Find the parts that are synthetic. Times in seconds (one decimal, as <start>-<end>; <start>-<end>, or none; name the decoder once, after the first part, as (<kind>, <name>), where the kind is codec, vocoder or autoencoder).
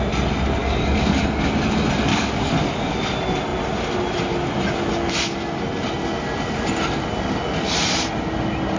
0.6-1.2 (codec, DAC); 2.1-3.0